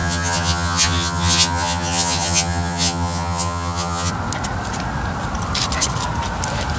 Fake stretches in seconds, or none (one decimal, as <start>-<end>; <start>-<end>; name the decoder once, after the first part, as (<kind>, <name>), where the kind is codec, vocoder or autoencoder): 0.0-4.1 (vocoder, HiFi-GAN)